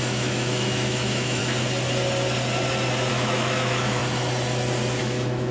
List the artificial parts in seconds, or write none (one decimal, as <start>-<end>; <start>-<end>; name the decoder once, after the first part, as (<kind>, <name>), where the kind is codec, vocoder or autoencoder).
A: 0.0-1.4 (autoencoder, DAC-VAE); 3.1-4.0; 5.0-5.5

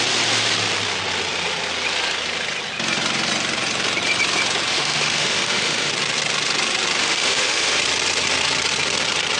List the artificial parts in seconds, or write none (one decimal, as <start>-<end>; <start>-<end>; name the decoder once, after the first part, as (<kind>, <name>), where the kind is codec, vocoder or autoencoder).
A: 4.7-5.9 (autoencoder, DAC-VAE); 7.0-7.8